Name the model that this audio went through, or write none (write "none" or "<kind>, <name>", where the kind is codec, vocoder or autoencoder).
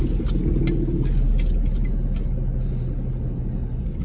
none